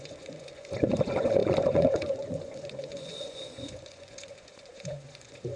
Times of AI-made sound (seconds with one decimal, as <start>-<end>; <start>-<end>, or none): 0.0-5.6